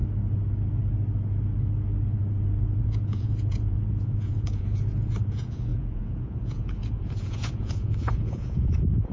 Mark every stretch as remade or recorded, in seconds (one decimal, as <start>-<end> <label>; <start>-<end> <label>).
0.0-2.8 recorded; 2.8-9.1 remade